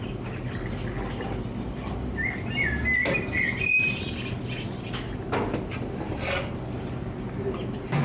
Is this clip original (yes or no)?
yes